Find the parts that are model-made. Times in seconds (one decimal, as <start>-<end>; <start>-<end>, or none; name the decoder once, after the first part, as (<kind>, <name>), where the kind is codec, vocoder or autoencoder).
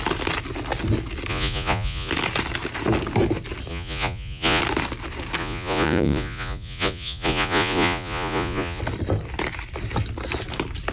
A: 1.3-2.1 (vocoder, Vocos); 3.7-4.6; 5.4-8.8